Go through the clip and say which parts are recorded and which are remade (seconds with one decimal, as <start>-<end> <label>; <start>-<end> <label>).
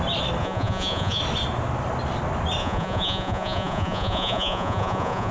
0.0-0.4 recorded; 0.4-1.2 remade; 1.2-2.6 recorded; 2.6-5.3 remade